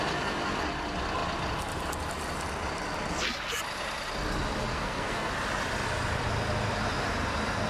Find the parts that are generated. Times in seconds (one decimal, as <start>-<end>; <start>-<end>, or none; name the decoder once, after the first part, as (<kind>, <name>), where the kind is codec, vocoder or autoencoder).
4.7-5.3 (codec, SNAC)